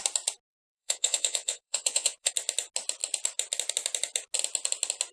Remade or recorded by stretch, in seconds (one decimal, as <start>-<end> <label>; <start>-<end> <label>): 0.0-0.5 recorded; 0.5-2.3 remade; 2.3-5.1 recorded